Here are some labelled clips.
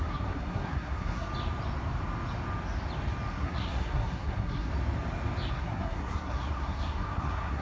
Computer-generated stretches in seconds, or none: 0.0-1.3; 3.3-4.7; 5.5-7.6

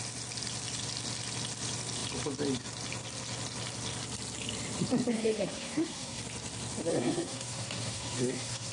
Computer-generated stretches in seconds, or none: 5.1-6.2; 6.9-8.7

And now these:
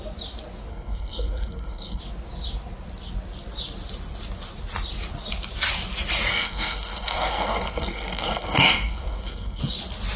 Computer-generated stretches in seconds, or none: 0.7-2.0; 6.3-9.6

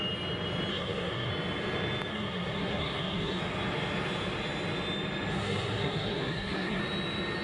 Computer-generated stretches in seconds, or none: 0.7-1.3; 2.1-3.4; 5.3-6.8

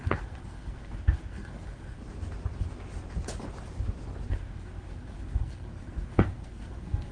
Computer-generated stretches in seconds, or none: 0.0-2.0; 4.3-7.1

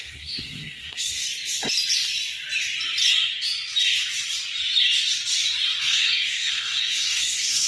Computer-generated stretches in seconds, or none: 0.0-1.2; 5.8-7.7

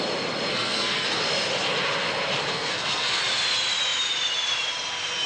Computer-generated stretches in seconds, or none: 0.5-1.2; 2.5-3.2

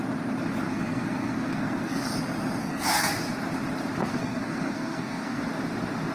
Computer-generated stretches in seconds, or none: 0.7-2.1; 2.6-3.1; 4.0-5.4